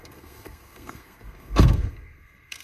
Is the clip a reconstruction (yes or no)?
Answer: yes